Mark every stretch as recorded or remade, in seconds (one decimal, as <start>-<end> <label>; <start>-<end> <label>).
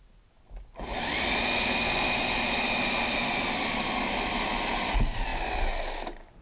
0.0-6.4 recorded